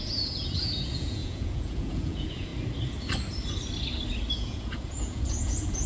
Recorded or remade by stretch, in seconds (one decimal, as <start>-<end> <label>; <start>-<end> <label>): 0.0-2.5 remade; 2.5-4.3 recorded; 4.3-5.9 remade

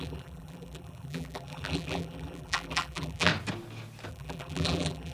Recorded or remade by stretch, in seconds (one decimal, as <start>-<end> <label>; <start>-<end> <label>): 0.0-3.3 remade; 3.3-4.1 recorded; 4.1-5.1 remade

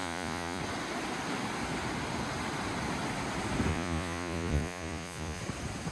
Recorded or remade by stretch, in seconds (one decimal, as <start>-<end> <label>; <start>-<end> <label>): 0.0-0.6 remade; 0.6-3.7 recorded; 3.7-5.4 remade; 5.4-5.9 recorded